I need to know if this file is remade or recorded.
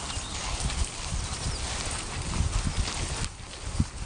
recorded